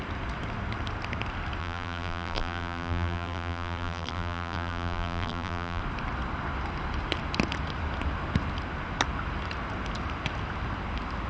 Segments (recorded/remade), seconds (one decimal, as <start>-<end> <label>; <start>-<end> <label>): 0.0-1.6 recorded; 1.6-5.8 remade; 5.8-11.3 recorded